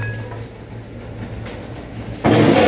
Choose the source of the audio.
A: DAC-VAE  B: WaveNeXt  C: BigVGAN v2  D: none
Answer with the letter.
D